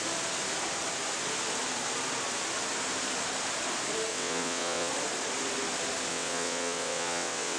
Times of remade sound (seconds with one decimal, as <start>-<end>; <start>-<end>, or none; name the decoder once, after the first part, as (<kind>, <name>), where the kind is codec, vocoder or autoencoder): 4.1-4.9 (vocoder, WaveNeXt); 6.1-7.6